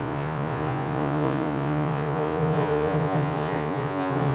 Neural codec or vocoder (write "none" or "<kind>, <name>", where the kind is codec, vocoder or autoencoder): vocoder, Vocos